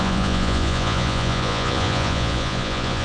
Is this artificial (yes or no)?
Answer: yes